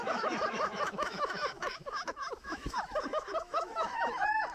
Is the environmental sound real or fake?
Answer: fake